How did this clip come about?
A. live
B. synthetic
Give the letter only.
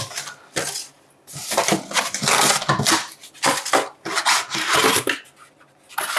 A